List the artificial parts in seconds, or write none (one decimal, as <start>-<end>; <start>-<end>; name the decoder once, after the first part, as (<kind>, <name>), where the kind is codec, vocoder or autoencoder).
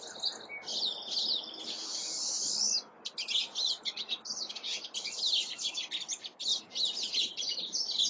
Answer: none